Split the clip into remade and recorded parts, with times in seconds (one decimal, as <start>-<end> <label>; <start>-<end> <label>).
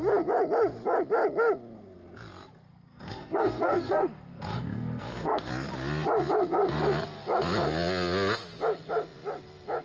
0.0-2.7 recorded; 2.7-5.5 remade; 5.5-9.8 recorded